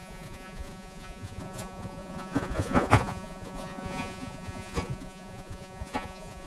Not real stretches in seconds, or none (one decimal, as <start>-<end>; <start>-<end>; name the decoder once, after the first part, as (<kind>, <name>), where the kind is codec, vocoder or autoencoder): 0.0-6.5 (vocoder, Vocos)